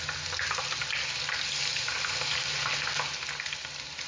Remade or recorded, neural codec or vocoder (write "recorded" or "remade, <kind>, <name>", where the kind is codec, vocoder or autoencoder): recorded